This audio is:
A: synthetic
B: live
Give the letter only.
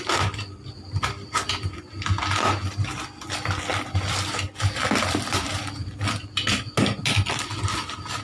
B